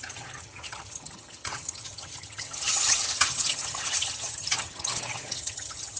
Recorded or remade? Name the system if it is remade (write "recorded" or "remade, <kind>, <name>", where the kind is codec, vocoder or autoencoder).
remade, vocoder, HiFi-GAN